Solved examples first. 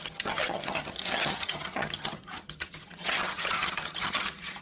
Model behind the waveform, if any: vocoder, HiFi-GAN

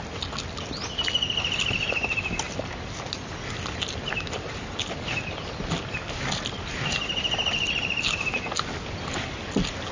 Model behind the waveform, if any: none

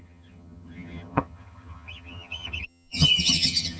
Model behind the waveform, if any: vocoder, HiFi-GAN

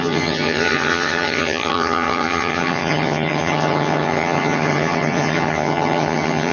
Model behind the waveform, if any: vocoder, HiFi-GAN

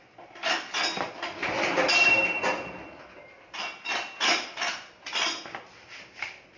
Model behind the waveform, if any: none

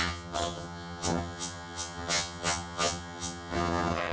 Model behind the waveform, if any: vocoder, HiFi-GAN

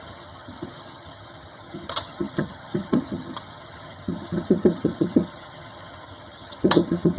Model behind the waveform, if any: vocoder, HiFi-GAN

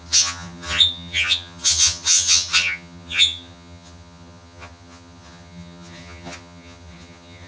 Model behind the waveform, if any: vocoder, HiFi-GAN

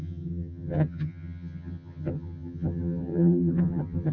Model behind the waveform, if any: vocoder, HiFi-GAN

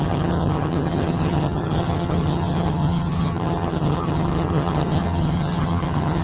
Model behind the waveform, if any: vocoder, HiFi-GAN